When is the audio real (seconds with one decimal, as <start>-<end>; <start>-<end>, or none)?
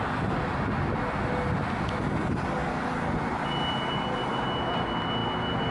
0.0-5.7